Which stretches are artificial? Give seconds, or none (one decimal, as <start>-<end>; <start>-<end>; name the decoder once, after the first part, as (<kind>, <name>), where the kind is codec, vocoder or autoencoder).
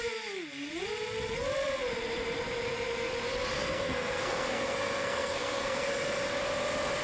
3.5-5.9 (codec, SNAC)